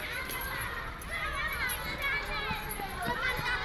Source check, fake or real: real